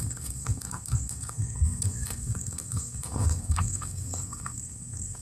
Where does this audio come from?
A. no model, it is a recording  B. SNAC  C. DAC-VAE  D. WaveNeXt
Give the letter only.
B